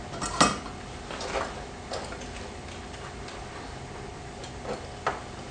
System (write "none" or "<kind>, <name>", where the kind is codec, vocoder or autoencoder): none